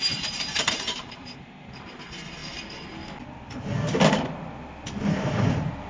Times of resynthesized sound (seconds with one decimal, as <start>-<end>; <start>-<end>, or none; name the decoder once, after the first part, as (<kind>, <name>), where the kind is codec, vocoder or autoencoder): 0.0-2.4 (vocoder, BigVGAN v2)